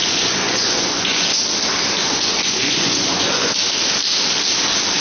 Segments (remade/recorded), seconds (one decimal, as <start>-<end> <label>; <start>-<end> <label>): 0.0-1.4 remade; 1.4-2.0 recorded; 2.0-3.5 remade; 3.5-5.0 recorded